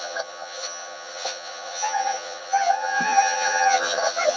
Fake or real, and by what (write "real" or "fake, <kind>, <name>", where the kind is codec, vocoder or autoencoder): fake, vocoder, HiFi-GAN